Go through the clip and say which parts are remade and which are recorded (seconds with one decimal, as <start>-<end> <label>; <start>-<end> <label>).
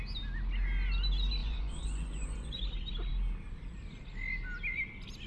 0.0-1.4 recorded; 1.4-2.6 remade; 2.6-5.3 recorded